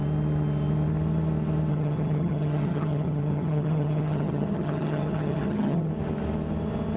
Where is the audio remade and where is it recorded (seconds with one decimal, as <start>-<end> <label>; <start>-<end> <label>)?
0.0-1.7 recorded; 1.7-5.9 remade; 5.9-7.0 recorded